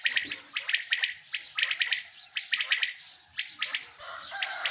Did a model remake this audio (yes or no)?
no